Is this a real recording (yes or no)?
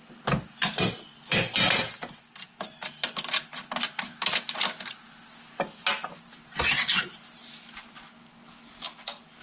yes